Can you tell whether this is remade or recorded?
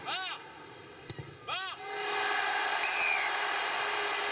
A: recorded